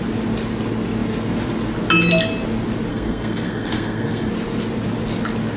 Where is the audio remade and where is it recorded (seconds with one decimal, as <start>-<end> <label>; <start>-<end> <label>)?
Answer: 0.0-2.9 recorded; 2.9-4.3 remade; 4.3-5.6 recorded

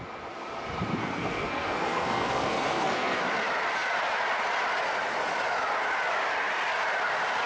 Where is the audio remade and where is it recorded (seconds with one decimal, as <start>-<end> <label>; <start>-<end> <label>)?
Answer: 0.0-1.0 recorded; 1.0-3.2 remade; 3.2-7.5 recorded

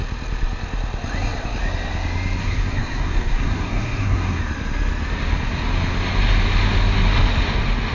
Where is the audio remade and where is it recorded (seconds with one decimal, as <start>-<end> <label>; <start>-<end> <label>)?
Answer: 0.0-2.4 recorded; 2.4-4.4 remade; 4.4-7.9 recorded

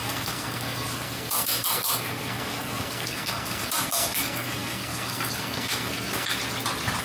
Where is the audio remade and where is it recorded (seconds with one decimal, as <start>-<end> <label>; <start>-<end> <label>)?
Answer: 0.0-6.4 remade; 6.4-7.0 recorded

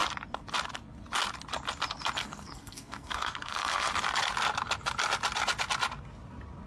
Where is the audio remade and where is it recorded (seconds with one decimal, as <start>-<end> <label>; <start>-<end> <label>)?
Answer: 0.0-2.2 recorded; 2.2-3.9 remade; 3.9-6.7 recorded

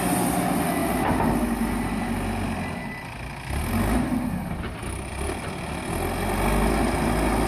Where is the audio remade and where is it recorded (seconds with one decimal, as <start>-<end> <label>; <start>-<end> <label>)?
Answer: 0.0-7.5 recorded

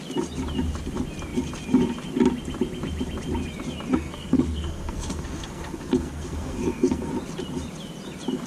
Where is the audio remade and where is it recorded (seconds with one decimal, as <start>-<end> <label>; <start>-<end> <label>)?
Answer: 0.0-3.9 recorded; 3.9-7.1 remade; 7.1-8.5 recorded

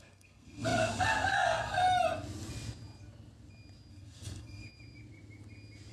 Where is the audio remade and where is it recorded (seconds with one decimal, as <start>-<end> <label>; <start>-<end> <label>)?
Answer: 0.0-1.8 remade; 1.8-3.9 recorded; 3.9-4.6 remade; 4.6-5.9 recorded